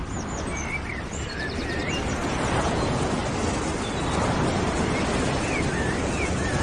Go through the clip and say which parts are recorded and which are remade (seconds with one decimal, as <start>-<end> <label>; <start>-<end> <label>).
0.0-2.6 recorded; 2.6-3.2 remade; 3.2-6.0 recorded; 6.0-6.6 remade